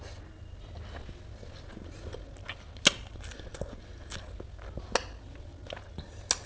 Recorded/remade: recorded